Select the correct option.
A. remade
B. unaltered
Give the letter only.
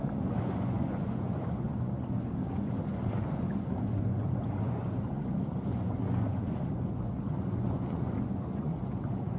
A